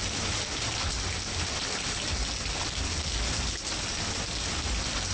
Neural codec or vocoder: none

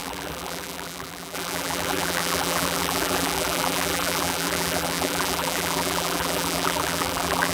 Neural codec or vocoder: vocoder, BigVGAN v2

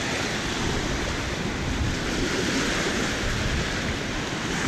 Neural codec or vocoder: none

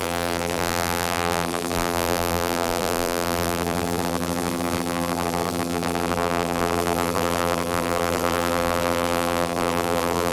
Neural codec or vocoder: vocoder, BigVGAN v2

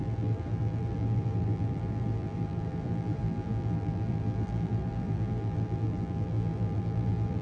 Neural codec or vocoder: vocoder, BigVGAN v2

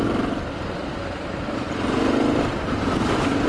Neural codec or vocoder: none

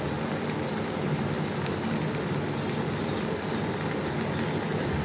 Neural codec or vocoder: none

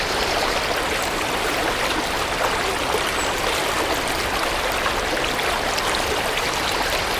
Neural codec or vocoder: none